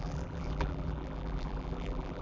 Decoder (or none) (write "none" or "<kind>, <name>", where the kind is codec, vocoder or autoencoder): vocoder, BigVGAN v2